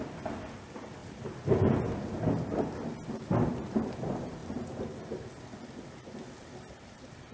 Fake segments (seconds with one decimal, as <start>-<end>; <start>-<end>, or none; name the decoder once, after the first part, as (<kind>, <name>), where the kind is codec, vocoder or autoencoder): 0.0-1.0 (vocoder, BigVGAN v2); 3.5-4.4; 6.6-7.3